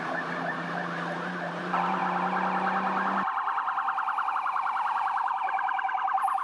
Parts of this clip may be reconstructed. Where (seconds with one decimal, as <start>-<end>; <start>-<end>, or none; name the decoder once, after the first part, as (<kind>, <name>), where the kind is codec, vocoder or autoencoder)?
0.0-2.0 (vocoder, BigVGAN v2); 4.3-6.4